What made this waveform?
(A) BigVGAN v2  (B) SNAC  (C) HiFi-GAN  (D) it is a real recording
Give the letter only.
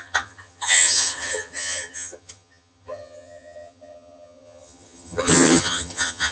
C